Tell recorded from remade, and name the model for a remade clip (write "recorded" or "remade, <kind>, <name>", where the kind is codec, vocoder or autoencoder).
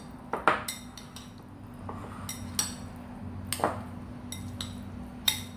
recorded